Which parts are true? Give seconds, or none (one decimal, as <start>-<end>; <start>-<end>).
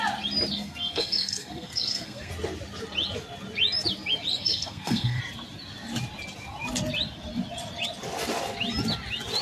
0.0-0.5; 2.3-4.3; 5.2-9.4